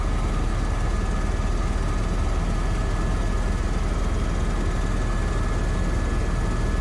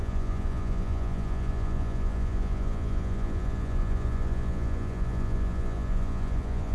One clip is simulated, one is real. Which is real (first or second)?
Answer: first